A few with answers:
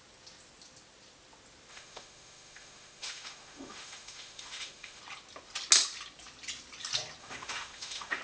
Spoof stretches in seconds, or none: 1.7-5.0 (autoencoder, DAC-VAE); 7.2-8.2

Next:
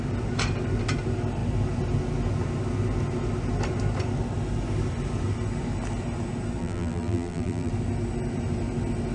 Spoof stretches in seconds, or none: 6.6-7.7 (vocoder, BigVGAN v2)